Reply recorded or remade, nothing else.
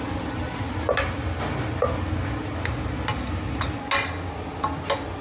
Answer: recorded